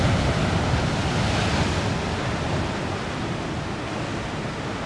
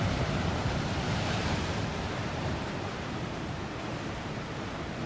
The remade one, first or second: second